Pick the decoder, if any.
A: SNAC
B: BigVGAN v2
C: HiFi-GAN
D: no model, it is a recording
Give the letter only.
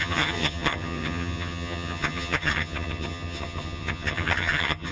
C